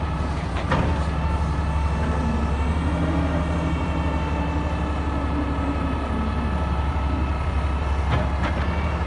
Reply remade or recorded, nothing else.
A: remade